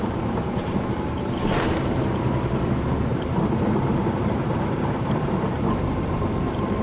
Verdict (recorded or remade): remade